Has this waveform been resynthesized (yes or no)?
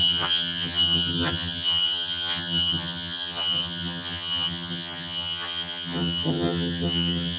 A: yes